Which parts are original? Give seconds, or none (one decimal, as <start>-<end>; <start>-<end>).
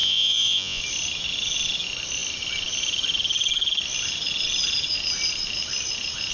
0.8-6.3